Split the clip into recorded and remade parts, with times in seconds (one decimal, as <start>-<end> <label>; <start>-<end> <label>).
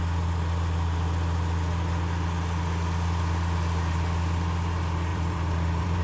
0.0-5.1 recorded; 5.1-6.0 remade